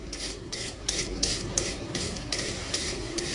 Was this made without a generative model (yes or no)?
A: no